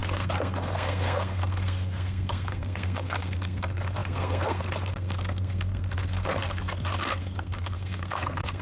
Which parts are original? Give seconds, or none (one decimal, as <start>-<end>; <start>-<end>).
none